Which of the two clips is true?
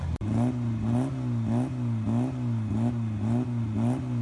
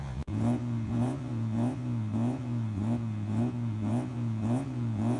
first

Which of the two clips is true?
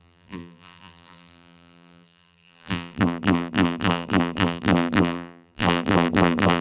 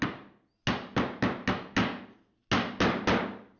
second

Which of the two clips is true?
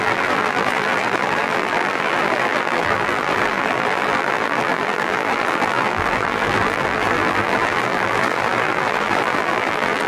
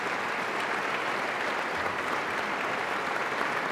second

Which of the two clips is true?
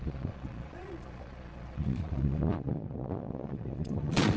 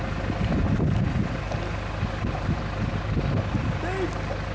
second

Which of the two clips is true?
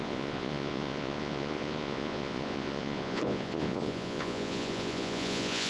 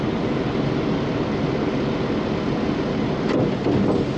second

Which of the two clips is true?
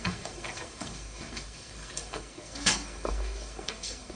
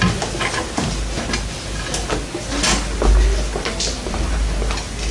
second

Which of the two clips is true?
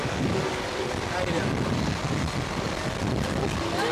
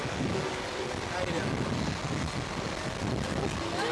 second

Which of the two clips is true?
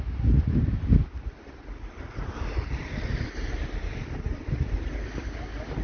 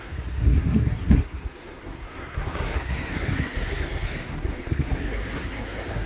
first